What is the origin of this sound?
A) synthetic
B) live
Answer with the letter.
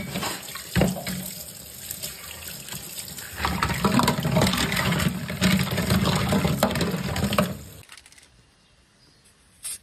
B